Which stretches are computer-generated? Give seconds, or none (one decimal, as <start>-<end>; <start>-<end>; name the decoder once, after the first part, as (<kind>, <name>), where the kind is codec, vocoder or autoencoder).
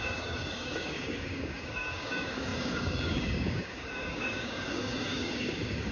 0.0-5.9 (codec, DAC)